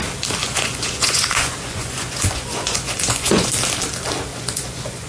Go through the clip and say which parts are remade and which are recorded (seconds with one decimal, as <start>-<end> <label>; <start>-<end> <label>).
0.0-0.4 recorded; 0.4-3.5 remade; 3.5-4.3 recorded; 4.3-5.1 remade